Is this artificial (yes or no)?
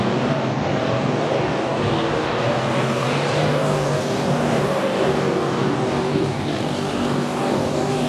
yes